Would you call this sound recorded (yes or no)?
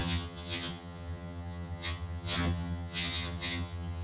no